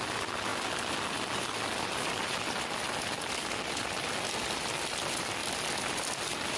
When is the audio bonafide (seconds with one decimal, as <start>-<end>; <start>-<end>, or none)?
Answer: 0.0-6.6